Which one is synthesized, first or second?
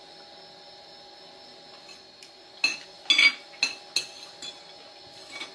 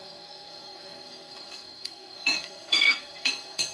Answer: second